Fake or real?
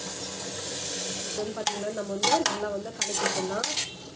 real